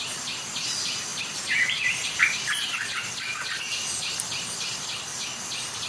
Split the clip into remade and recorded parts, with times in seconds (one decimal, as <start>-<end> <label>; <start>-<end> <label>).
0.0-5.9 recorded